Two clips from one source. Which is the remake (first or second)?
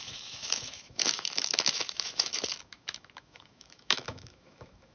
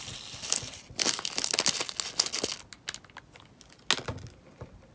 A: first